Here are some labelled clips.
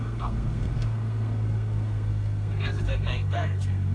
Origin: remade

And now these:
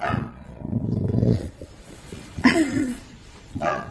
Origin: remade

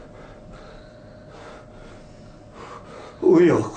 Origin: recorded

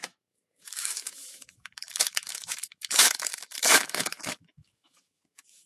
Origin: remade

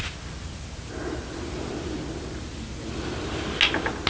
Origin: recorded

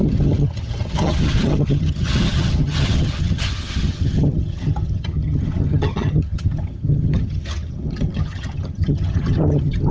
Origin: remade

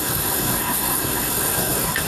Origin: remade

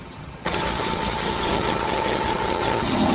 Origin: remade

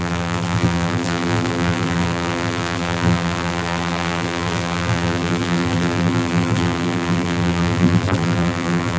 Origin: remade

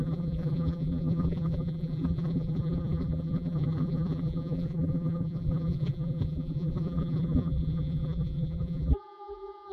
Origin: remade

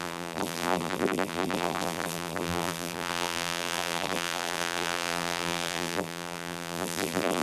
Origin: remade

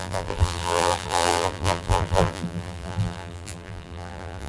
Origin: remade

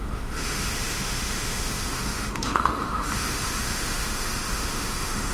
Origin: remade